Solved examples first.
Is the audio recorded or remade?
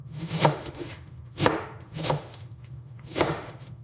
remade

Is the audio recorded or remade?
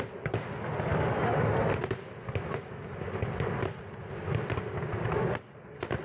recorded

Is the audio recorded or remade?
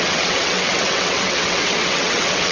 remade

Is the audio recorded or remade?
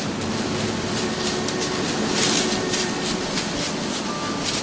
recorded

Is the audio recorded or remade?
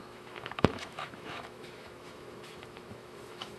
remade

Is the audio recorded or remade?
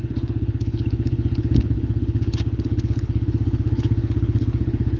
remade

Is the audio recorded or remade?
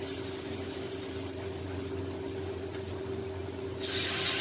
recorded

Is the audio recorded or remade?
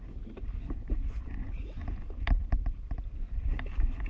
recorded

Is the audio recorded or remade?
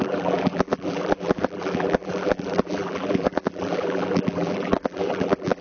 remade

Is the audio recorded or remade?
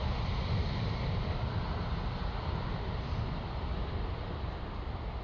recorded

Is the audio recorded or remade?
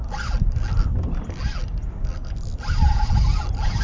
recorded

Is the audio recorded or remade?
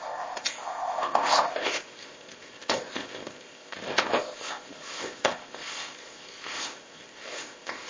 remade